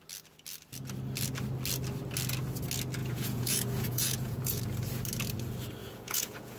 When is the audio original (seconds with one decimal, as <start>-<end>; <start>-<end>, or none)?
0.0-3.0; 4.6-5.8